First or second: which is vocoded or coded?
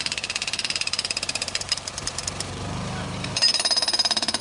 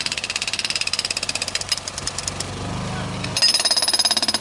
first